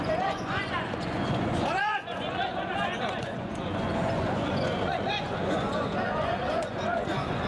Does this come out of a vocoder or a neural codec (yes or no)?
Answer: yes